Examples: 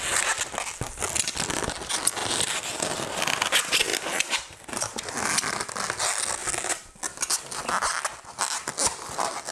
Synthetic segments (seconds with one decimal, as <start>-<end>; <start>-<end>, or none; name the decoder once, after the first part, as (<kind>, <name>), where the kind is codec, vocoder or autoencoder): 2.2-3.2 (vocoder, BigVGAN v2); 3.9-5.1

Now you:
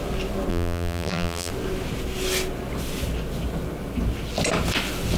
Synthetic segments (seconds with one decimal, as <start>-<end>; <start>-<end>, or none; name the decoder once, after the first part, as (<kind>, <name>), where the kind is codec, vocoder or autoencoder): 0.5-1.5 (vocoder, BigVGAN v2)

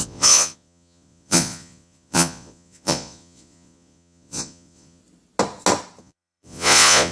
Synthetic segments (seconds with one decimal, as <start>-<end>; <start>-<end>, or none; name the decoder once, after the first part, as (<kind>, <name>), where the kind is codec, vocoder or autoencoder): 0.0-5.0 (vocoder, Vocos); 6.0-7.1

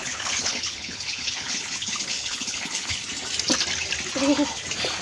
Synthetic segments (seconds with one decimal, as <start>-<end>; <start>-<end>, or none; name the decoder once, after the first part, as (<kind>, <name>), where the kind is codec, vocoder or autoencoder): 0.0-3.0 (codec, HILCodec)

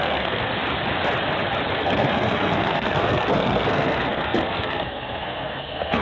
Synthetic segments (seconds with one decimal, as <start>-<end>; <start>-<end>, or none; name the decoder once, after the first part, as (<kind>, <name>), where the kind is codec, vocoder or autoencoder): 0.0-0.5 (codec, SNAC); 1.7-6.0

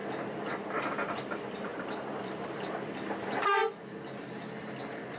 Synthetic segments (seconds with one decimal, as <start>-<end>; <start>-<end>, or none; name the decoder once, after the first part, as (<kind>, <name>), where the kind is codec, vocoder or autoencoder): 0.0-3.6 (vocoder, BigVGAN v2)

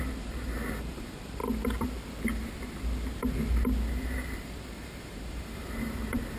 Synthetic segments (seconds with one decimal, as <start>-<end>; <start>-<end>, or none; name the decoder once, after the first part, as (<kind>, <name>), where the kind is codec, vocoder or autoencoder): 0.0-1.4 (vocoder, BigVGAN v2); 3.9-6.4